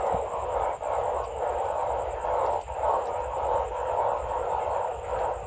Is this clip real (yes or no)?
yes